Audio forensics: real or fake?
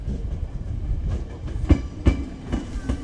real